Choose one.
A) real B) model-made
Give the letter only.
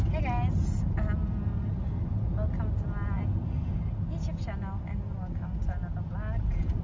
A